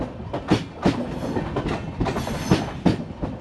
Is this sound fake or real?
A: real